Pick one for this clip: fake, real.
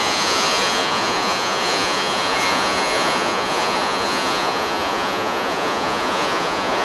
fake